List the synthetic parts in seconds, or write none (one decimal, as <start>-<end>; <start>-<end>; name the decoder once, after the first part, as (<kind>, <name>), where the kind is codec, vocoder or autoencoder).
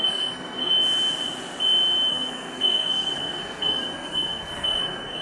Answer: 0.0-0.7 (codec, SNAC); 2.1-5.2